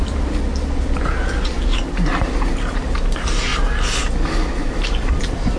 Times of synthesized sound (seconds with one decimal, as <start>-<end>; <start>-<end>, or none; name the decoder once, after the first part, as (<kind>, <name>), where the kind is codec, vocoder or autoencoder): 0.0-0.5 (vocoder, BigVGAN v2); 2.1-3.5; 4.5-5.6

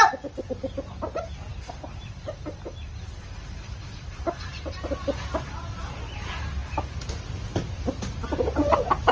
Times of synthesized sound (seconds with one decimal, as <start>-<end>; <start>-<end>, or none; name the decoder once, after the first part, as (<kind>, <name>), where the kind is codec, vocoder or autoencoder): 1.5-4.7 (vocoder, BigVGAN v2)

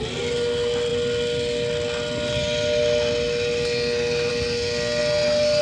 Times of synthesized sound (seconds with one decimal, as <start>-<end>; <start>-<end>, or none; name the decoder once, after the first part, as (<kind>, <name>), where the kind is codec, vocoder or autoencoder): none